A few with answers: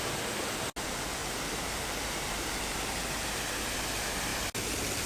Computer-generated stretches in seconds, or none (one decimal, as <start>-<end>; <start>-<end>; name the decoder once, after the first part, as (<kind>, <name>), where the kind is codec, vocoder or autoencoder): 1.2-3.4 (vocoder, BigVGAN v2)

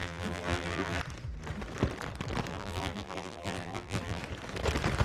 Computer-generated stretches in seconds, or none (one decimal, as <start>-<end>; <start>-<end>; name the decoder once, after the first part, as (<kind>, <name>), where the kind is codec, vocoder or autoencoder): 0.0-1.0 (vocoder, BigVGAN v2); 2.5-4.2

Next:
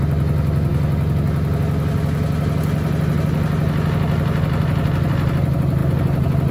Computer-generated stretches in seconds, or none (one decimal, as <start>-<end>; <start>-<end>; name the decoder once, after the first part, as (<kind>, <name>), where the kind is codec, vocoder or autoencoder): none

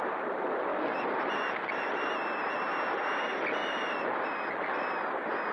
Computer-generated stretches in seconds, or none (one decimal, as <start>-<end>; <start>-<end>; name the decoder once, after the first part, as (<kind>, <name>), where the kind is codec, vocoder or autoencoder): 3.6-4.2 (vocoder, BigVGAN v2)